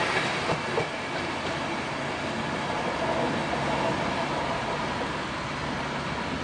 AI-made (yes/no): no